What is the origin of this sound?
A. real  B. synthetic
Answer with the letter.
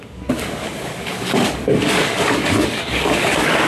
B